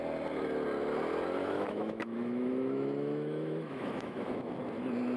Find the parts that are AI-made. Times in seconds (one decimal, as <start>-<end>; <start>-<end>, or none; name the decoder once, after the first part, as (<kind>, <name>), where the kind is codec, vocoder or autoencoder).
1.4-4.5 (autoencoder, DAC-VAE)